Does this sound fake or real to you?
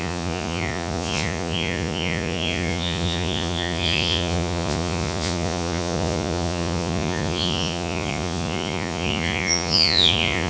fake